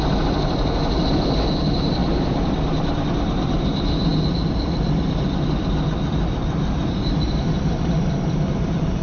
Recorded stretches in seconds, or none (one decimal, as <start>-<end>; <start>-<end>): none